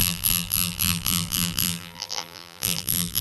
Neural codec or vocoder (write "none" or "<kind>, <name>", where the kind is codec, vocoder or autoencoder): vocoder, BigVGAN v2